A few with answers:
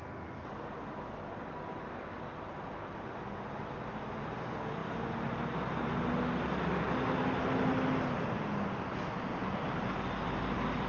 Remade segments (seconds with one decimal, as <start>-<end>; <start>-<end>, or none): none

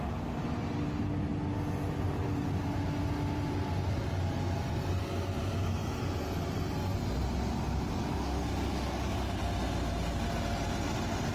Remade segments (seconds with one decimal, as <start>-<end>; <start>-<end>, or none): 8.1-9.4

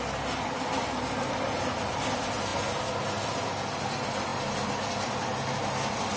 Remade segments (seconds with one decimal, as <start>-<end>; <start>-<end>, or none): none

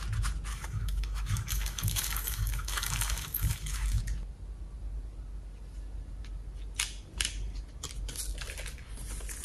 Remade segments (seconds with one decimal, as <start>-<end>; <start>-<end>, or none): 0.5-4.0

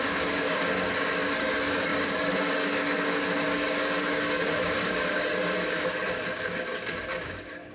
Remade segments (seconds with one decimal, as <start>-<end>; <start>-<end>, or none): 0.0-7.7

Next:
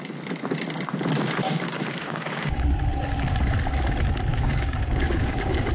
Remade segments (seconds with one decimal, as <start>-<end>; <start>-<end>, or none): 1.4-2.8; 4.3-5.7